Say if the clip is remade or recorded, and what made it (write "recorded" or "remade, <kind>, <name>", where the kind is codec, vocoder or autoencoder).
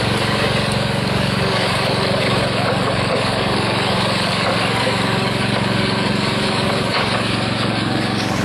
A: remade, codec, DAC